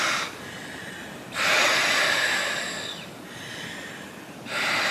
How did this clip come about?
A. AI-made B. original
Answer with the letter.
B